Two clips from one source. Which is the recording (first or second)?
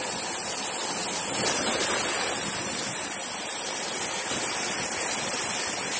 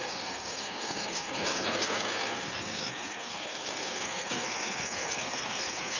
first